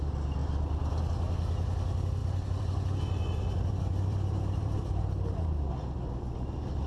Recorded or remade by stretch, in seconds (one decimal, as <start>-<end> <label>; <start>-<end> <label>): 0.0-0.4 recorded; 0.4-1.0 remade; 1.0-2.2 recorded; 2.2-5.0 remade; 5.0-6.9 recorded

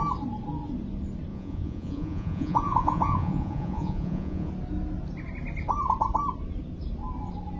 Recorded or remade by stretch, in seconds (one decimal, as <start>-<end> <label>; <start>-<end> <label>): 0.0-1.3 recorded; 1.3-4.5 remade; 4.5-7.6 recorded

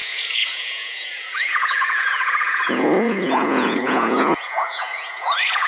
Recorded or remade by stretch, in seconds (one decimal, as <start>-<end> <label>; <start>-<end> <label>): 0.0-5.7 remade